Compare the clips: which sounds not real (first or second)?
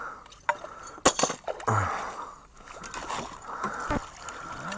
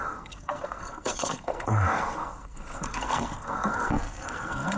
second